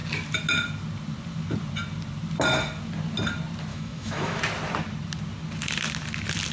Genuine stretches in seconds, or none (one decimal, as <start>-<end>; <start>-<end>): 0.0-3.7; 4.4-6.5